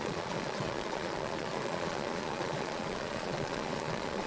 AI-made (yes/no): yes